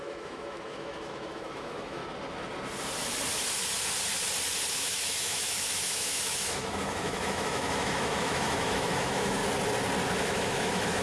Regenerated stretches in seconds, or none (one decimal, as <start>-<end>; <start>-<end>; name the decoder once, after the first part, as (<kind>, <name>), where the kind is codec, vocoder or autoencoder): 0.0-2.0 (autoencoder, DAC-VAE); 4.7-9.4; 10.2-11.0